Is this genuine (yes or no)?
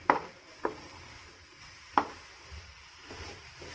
yes